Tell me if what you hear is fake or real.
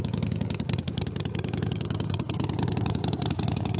fake